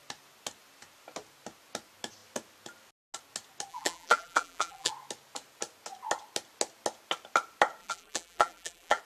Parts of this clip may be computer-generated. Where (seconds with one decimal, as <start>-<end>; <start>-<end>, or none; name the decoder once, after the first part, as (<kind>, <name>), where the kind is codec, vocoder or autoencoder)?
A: 3.7-4.9 (vocoder, BigVGAN v2); 7.8-9.0